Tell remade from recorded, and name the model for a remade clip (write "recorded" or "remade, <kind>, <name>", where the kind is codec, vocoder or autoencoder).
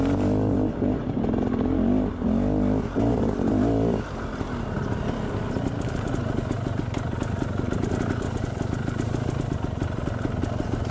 recorded